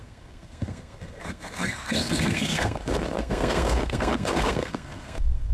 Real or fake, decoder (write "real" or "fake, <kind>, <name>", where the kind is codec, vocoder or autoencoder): fake, codec, SNAC